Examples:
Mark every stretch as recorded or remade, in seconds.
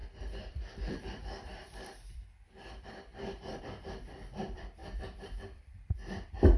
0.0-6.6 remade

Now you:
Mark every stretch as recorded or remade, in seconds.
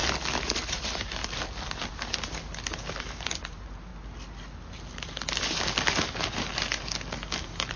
0.0-0.7 recorded; 0.7-1.2 remade; 1.2-3.0 recorded; 3.0-3.9 remade; 3.9-7.3 recorded; 7.3-7.8 remade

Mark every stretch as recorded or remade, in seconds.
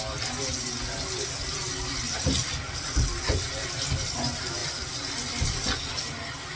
0.0-6.6 recorded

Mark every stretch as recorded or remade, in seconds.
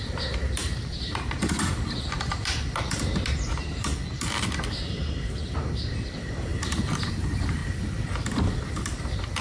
0.0-3.9 remade; 3.9-4.7 recorded; 4.7-6.5 remade; 6.5-7.1 recorded; 7.1-7.6 remade; 7.6-9.4 recorded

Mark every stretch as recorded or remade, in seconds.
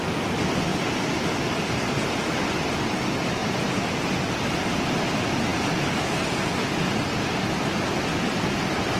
0.0-3.4 recorded; 3.4-4.1 remade; 4.1-9.0 recorded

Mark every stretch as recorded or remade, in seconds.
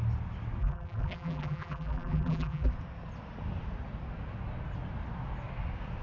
0.0-0.6 recorded; 0.6-2.7 remade; 2.7-6.0 recorded